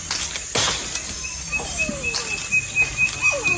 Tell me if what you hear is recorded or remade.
recorded